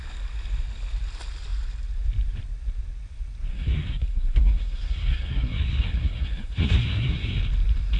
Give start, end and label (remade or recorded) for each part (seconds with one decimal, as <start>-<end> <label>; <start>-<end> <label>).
0.0-3.5 recorded; 3.5-7.4 remade; 7.4-8.0 recorded